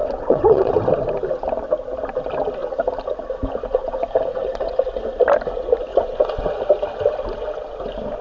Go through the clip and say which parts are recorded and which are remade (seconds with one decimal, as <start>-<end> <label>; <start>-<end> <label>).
0.0-0.7 remade; 0.7-4.3 recorded; 4.3-4.8 remade; 4.8-5.9 recorded; 5.9-6.4 remade; 6.4-8.2 recorded